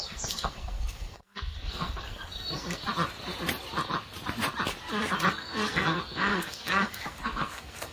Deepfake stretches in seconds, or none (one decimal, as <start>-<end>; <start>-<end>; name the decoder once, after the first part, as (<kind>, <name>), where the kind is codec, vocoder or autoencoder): 0.0-2.8 (codec, SNAC); 5.3-7.9

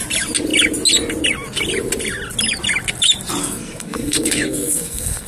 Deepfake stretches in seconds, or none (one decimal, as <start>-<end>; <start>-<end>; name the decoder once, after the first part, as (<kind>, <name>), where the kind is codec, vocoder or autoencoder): 3.4-5.3 (codec, SNAC)

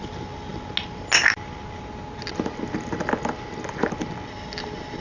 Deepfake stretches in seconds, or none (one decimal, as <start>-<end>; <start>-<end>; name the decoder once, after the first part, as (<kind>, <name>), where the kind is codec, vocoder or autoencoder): none